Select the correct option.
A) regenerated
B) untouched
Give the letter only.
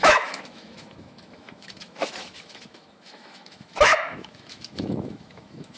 A